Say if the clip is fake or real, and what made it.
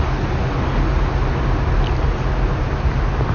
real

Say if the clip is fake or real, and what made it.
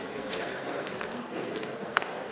fake, codec, SNAC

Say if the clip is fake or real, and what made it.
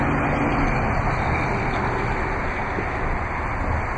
real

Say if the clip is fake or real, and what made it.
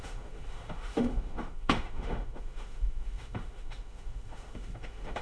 fake, autoencoder, DAC-VAE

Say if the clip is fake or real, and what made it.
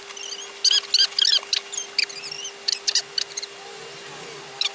real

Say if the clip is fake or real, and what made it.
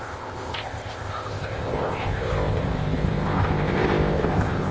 fake, codec, ZipCodec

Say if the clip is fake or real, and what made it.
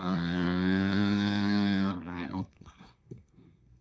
fake, codec, SNAC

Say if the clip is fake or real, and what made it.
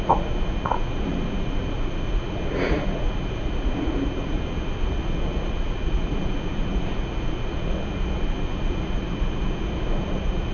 fake, vocoder, Vocos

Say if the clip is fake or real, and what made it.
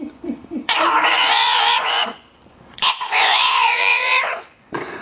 fake, vocoder, Vocos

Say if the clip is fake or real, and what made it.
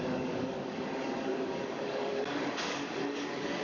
fake, codec, DAC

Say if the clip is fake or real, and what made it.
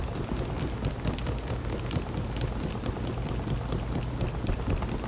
real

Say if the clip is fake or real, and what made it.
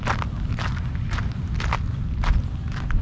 real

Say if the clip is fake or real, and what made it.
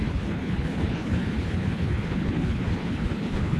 fake, codec, HILCodec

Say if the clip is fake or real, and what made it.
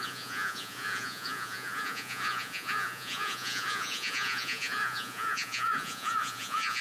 fake, vocoder, Vocos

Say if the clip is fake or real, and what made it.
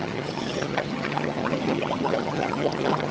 fake, vocoder, HiFi-GAN